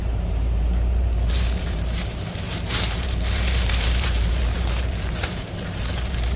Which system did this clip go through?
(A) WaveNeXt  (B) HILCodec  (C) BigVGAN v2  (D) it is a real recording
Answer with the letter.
C